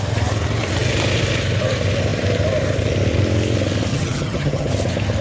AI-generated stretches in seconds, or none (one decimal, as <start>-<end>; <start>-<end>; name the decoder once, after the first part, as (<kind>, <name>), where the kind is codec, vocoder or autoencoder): 3.9-4.7 (vocoder, HiFi-GAN)